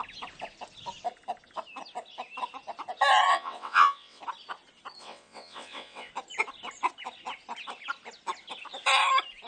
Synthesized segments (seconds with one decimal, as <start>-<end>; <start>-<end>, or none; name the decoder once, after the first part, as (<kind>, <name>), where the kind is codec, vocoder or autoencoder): 3.3-4.2 (vocoder, WaveNeXt); 5.0-6.1